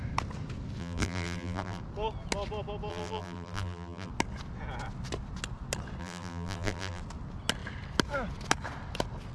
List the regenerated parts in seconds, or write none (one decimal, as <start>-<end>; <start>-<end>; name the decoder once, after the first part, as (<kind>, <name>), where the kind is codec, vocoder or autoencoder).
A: 0.8-1.8 (vocoder, BigVGAN v2); 2.9-4.1; 6.0-7.0